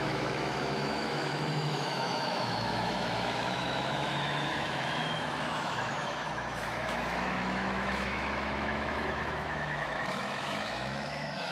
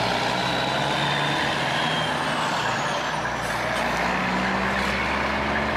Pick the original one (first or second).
second